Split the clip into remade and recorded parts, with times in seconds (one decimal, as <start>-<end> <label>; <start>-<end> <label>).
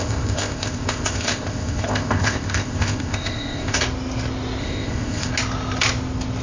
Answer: 0.0-3.8 remade; 3.8-4.6 recorded; 4.6-5.3 remade; 5.3-6.4 recorded